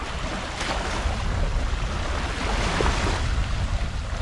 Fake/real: real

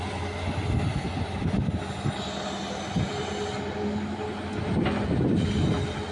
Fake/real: real